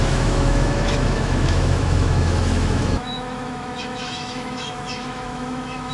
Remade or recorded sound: remade